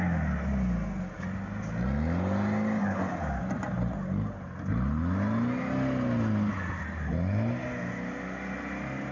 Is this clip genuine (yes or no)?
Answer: yes